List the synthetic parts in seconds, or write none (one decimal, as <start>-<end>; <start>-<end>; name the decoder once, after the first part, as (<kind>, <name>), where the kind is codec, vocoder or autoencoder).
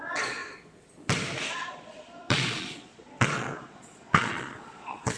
0.0-0.4 (vocoder, Vocos); 1.5-5.2